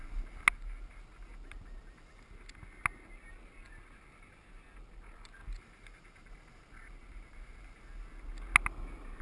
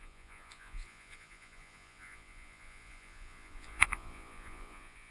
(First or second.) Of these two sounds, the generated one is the second